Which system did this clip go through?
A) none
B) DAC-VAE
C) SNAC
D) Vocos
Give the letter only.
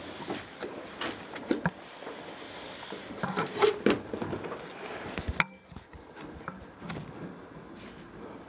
A